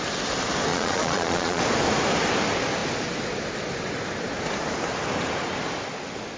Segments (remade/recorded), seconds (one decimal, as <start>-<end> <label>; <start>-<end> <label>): 0.0-0.7 recorded; 0.7-1.6 remade; 1.6-6.4 recorded